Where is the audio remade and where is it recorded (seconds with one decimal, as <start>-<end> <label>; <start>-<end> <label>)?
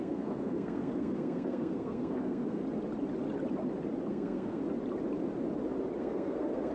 0.0-2.6 remade; 2.6-4.1 recorded; 4.1-4.6 remade; 4.6-6.0 recorded; 6.0-6.7 remade